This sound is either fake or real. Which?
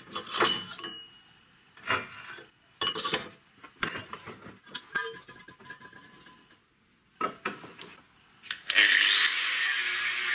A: real